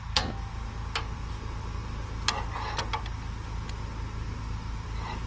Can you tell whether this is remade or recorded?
recorded